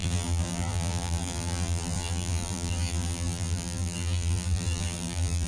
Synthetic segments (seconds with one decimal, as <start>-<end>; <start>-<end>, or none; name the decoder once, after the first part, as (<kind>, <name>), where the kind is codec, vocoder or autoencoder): 0.0-5.5 (vocoder, BigVGAN v2)